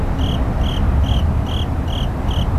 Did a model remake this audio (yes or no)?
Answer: no